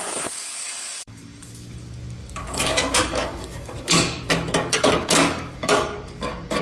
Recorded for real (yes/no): no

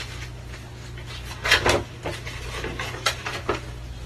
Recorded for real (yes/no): yes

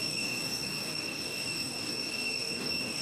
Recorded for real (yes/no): no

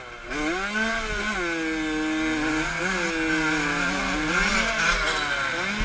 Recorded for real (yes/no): yes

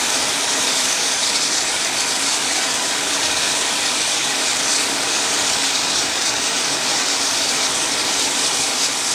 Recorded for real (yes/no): no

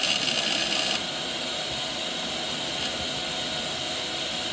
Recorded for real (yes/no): yes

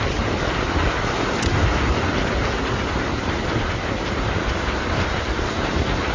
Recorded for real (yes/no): yes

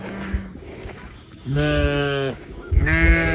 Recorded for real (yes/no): no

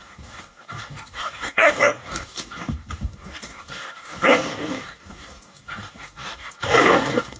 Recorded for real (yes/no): no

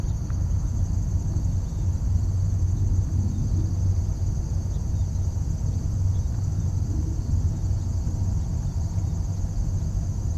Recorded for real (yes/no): yes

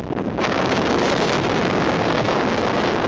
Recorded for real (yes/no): no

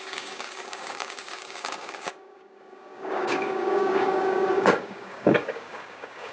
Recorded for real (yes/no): no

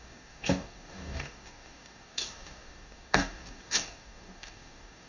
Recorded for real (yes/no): no